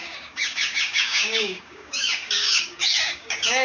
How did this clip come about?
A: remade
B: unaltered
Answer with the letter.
A